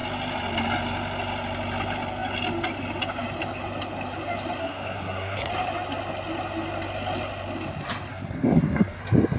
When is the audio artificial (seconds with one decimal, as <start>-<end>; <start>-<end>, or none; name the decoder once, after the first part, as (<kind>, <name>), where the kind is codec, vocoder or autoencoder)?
4.6-5.5 (codec, SNAC); 8.1-9.0